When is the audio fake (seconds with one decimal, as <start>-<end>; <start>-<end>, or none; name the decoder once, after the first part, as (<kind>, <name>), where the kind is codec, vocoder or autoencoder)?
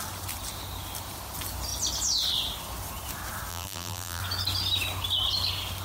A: 3.5-4.2 (vocoder, BigVGAN v2)